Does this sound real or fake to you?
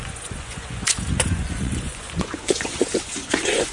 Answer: fake